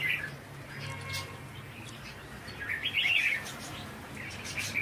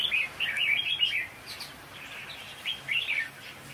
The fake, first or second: second